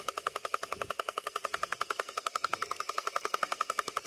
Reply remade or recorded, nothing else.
remade